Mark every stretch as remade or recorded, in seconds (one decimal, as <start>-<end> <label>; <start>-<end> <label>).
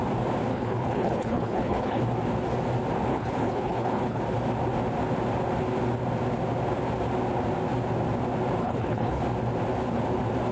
0.0-0.5 recorded; 0.5-2.0 remade; 2.0-3.1 recorded; 3.1-4.2 remade; 4.2-8.6 recorded; 8.6-9.2 remade; 9.2-10.5 recorded